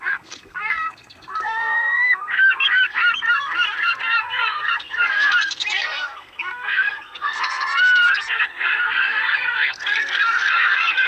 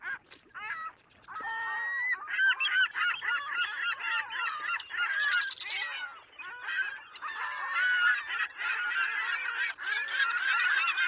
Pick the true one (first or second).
second